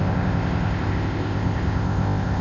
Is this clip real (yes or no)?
no